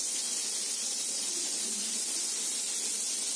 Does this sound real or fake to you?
real